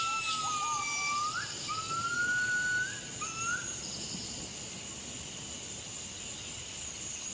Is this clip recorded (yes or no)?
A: yes